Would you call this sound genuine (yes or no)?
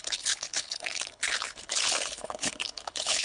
no